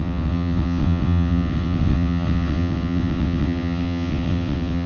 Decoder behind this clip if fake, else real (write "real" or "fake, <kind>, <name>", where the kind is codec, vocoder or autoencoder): fake, vocoder, WaveNeXt